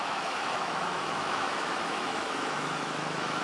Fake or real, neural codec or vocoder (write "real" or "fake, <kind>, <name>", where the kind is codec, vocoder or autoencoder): fake, autoencoder, DAC-VAE